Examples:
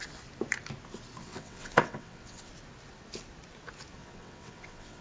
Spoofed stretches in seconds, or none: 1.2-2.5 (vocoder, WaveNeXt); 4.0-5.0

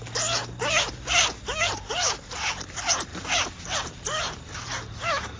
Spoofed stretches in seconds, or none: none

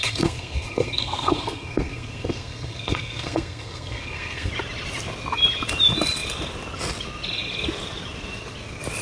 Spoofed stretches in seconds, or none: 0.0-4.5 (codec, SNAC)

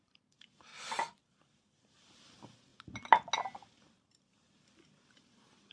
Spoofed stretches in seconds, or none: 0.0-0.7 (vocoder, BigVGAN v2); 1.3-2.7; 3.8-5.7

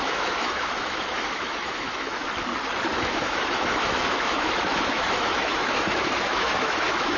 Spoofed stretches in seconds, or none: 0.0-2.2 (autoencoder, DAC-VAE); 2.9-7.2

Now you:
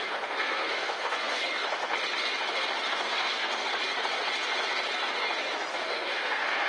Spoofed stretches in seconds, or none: 0.0-1.4 (codec, SNAC); 2.9-3.5; 5.7-6.7